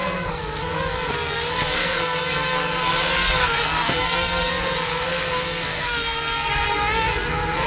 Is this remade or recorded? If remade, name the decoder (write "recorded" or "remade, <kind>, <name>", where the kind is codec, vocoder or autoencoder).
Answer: remade, codec, SNAC